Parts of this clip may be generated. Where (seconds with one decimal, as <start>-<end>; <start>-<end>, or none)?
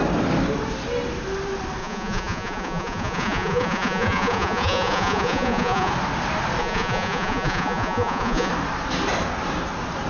1.8-5.9; 6.6-8.5